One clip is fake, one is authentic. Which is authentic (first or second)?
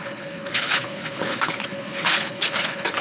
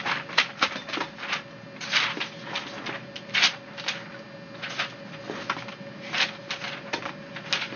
second